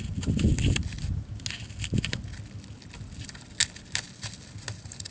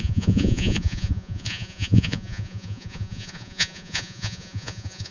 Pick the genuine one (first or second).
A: first